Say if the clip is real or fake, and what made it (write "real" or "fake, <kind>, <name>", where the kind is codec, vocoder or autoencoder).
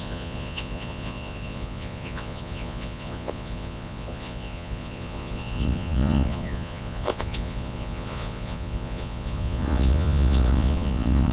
fake, vocoder, Vocos